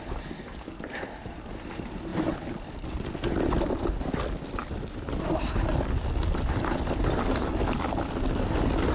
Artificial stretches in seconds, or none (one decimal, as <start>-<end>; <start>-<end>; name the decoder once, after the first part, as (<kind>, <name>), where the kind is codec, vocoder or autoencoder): none